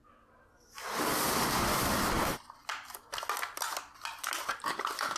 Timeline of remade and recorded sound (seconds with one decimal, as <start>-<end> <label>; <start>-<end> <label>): 0.0-5.2 recorded